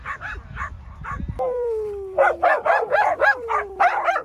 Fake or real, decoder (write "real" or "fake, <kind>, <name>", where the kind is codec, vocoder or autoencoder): fake, vocoder, BigVGAN v2